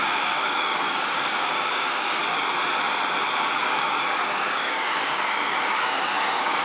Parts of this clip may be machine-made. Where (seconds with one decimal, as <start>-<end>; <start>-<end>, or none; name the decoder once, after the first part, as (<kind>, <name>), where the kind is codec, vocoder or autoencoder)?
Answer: 0.0-2.2 (codec, DAC); 3.6-6.6